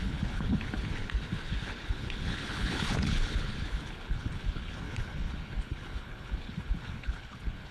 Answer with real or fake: fake